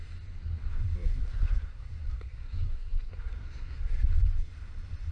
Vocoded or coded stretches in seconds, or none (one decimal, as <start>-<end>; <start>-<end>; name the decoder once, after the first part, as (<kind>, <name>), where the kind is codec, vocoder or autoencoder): 1.2-4.1 (codec, SNAC)